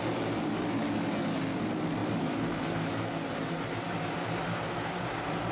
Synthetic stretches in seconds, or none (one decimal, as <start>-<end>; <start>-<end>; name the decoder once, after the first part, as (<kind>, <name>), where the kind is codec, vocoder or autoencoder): 2.0-5.5 (vocoder, BigVGAN v2)

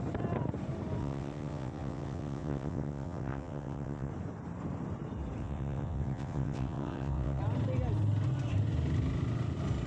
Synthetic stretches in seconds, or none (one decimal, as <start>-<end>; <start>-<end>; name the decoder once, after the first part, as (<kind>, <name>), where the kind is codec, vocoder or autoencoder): 1.0-4.1 (vocoder, WaveNeXt); 5.4-7.4

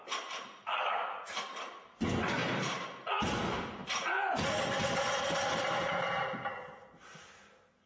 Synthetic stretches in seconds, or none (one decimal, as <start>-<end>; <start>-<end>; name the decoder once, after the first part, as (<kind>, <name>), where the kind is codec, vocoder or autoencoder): none

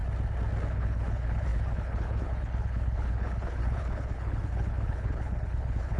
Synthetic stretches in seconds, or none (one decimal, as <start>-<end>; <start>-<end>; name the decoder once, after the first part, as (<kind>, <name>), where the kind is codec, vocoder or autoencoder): 0.7-6.0 (codec, HILCodec)

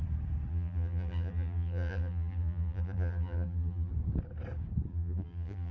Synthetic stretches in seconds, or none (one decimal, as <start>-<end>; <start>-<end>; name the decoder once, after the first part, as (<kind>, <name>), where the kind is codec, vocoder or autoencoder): 0.5-3.9 (vocoder, BigVGAN v2); 4.9-5.7

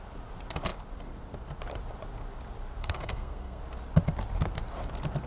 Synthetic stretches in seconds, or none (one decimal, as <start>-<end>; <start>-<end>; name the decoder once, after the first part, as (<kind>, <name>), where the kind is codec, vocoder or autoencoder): 2.8-3.6 (codec, SNAC)